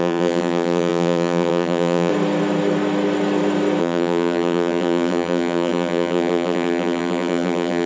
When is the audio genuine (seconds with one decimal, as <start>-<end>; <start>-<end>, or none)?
2.1-3.8